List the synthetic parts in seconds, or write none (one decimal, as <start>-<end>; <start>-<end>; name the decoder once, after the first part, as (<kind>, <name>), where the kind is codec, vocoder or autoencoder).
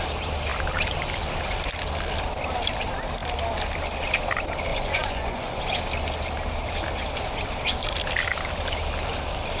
4.7-5.6 (vocoder, Vocos)